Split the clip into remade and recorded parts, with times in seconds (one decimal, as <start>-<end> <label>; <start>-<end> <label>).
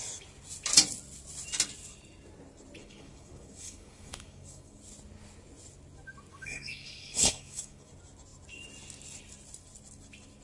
0.0-2.8 recorded; 2.8-4.8 remade; 4.8-6.3 recorded; 6.3-7.9 remade; 7.9-10.4 recorded